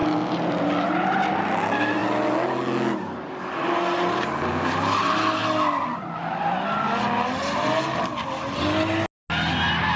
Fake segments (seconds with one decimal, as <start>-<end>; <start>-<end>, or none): none